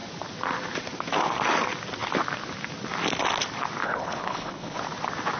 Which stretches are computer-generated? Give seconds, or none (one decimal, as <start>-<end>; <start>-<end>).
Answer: 3.8-4.8